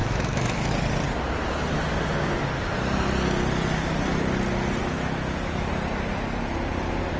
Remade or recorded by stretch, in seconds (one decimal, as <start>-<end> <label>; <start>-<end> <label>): 0.0-0.7 remade; 0.7-4.8 recorded; 4.8-5.7 remade; 5.7-7.2 recorded